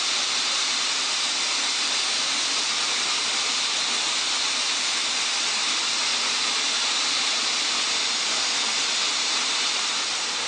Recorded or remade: recorded